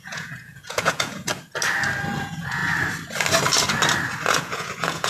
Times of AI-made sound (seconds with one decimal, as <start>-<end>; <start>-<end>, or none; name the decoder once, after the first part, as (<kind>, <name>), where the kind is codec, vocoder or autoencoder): 0.0-1.3 (vocoder, Vocos); 2.2-2.6; 4.3-5.1